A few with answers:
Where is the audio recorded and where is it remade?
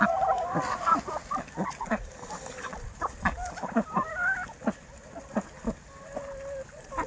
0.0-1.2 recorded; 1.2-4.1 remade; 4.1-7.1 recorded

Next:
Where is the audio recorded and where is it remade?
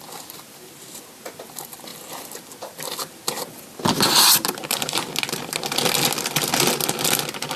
0.0-7.6 recorded